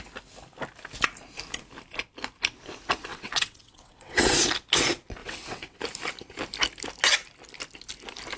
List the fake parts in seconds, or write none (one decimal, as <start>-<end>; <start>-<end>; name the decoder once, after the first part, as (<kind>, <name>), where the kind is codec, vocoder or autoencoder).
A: 3.1-4.4 (vocoder, WaveNeXt); 5.2-5.8